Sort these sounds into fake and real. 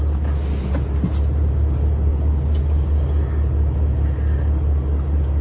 real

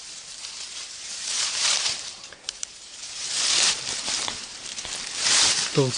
fake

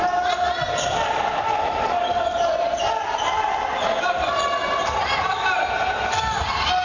real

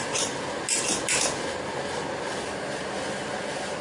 real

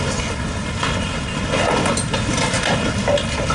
real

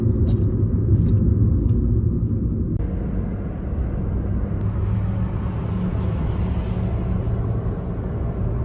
real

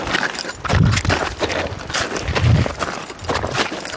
real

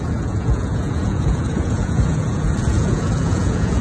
fake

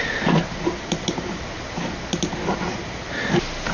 real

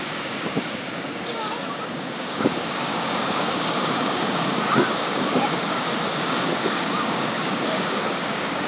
fake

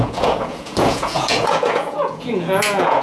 fake